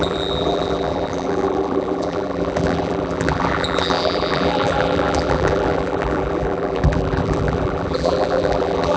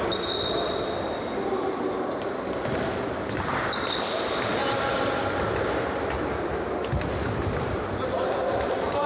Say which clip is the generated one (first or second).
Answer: first